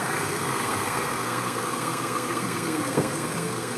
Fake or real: fake